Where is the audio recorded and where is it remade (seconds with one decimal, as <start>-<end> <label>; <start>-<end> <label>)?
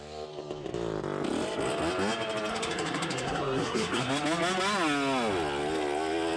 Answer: 0.0-2.5 recorded; 2.5-4.1 remade; 4.1-6.4 recorded